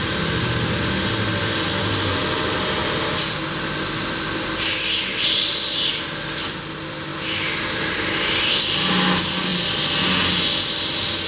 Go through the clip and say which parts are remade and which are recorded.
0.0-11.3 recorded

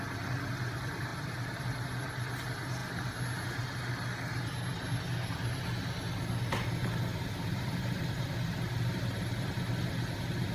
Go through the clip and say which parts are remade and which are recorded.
0.0-1.1 recorded; 1.1-1.6 remade; 1.6-7.1 recorded; 7.1-9.7 remade; 9.7-10.5 recorded